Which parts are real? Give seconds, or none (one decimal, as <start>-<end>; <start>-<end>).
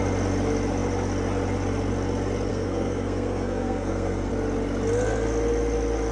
0.0-2.5; 4.3-6.1